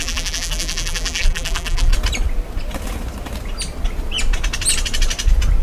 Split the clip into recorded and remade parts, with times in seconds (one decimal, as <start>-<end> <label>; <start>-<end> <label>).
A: 0.0-1.9 remade; 1.9-5.6 recorded